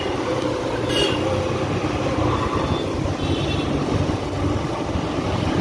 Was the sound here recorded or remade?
recorded